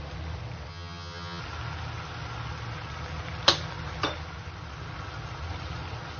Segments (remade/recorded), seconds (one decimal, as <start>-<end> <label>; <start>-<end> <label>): 0.0-0.7 recorded; 0.7-1.4 remade; 1.4-6.2 recorded